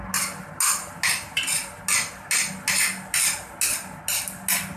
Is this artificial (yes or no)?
no